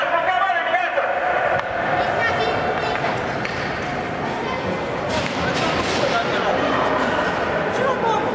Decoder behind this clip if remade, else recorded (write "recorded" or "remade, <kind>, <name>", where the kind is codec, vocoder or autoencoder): recorded